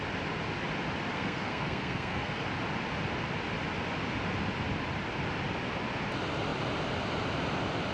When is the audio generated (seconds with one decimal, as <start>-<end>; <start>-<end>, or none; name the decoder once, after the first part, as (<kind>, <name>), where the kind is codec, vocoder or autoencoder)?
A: 1.1-2.4 (codec, SNAC)